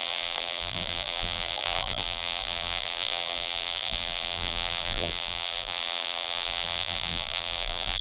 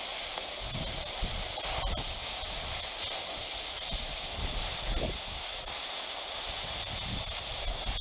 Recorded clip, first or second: second